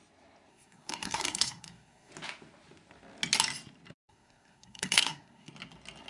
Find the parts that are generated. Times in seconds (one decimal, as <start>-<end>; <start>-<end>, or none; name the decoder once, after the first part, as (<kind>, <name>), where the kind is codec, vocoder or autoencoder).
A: 0.5-2.1 (codec, SNAC); 4.0-5.5

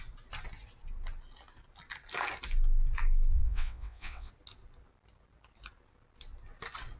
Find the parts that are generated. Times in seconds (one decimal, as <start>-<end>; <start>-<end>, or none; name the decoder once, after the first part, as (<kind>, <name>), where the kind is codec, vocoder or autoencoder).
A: 3.3-4.3 (vocoder, WaveNeXt)

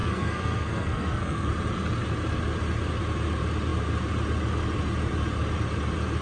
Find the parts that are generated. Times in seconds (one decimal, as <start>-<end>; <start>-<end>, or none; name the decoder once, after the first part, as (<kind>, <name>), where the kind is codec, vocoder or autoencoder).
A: 0.0-1.5 (codec, SNAC)

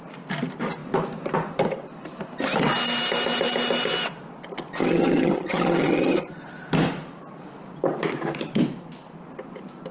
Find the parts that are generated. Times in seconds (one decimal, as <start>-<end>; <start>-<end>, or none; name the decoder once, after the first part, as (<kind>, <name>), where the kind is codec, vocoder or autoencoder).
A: 4.8-6.4 (vocoder, HiFi-GAN)

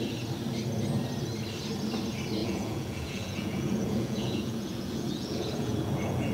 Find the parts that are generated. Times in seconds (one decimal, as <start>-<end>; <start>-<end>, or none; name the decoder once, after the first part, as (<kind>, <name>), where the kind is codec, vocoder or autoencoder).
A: 2.4-6.3 (vocoder, Vocos)

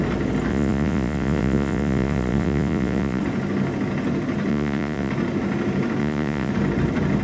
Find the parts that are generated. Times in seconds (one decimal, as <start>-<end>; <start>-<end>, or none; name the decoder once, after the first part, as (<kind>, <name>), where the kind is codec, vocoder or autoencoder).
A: 0.5-3.2 (vocoder, Vocos); 4.5-5.1; 6.0-6.5

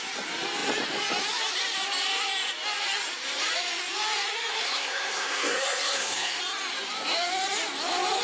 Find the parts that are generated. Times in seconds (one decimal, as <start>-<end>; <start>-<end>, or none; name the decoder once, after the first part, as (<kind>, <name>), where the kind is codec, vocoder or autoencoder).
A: 4.5-6.4 (codec, SNAC)

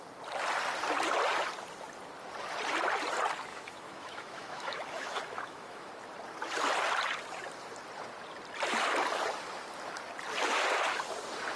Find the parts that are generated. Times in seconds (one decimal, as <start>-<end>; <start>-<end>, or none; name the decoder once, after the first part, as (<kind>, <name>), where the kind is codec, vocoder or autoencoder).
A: 3.5-5.9 (autoencoder, DAC-VAE)